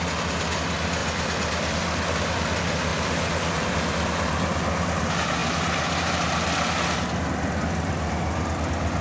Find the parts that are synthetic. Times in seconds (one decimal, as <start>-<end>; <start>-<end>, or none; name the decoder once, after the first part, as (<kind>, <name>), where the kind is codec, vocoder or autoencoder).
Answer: 2.9-3.7 (vocoder, BigVGAN v2)